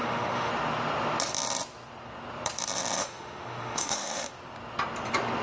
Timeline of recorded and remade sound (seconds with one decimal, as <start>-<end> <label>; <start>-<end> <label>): 0.0-0.5 remade; 0.5-3.0 recorded; 3.0-4.3 remade; 4.3-5.4 recorded